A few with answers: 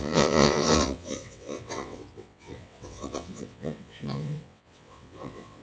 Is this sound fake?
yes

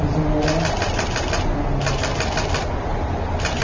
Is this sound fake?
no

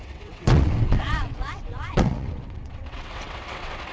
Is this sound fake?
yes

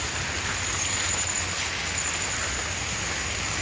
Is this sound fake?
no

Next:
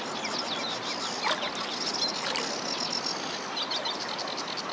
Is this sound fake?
no